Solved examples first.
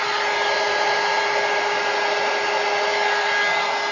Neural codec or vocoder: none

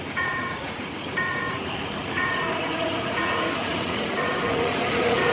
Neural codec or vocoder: vocoder, Vocos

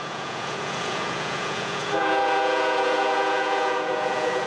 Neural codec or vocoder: vocoder, Vocos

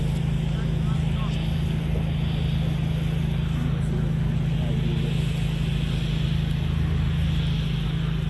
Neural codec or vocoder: none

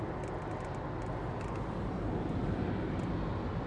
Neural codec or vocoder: none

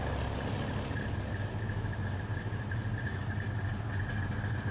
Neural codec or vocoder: none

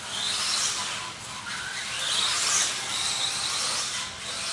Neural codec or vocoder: none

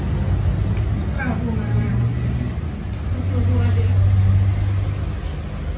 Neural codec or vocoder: none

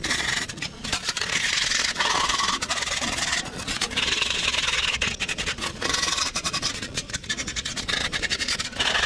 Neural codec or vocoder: vocoder, Vocos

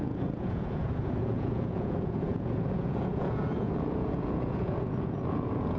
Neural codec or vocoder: vocoder, Vocos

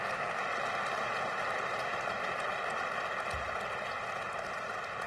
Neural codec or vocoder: none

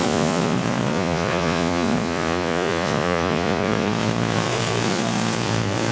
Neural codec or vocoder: vocoder, Vocos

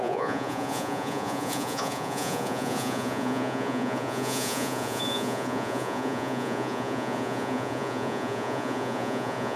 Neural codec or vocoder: vocoder, Vocos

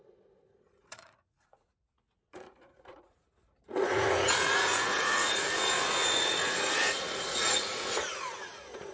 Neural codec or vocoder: vocoder, Vocos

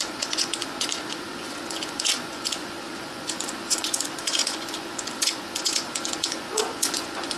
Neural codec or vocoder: vocoder, Vocos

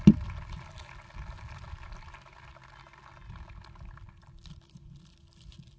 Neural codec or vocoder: none